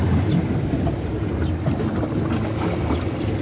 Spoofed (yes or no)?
no